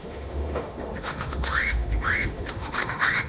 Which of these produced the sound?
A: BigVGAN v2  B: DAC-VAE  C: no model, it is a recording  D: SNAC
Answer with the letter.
B